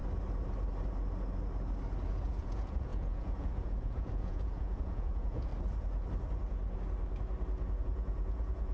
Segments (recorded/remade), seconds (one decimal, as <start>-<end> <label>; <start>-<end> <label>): 0.0-2.1 recorded; 2.1-5.5 remade; 5.5-7.8 recorded; 7.8-8.7 remade